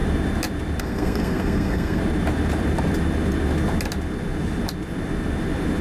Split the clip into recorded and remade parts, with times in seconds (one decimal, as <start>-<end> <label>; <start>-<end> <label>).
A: 0.0-0.8 recorded; 0.8-2.0 remade; 2.0-5.8 recorded